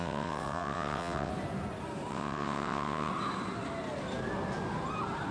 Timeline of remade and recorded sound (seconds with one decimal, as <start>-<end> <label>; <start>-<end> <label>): 0.0-1.3 remade; 1.3-2.1 recorded; 2.1-3.1 remade; 3.1-5.3 recorded